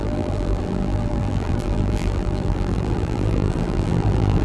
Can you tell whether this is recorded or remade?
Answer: remade